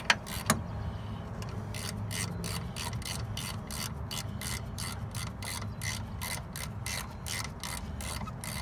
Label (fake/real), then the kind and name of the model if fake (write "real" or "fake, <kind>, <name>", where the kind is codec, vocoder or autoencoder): real